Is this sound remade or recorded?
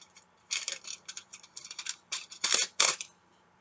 remade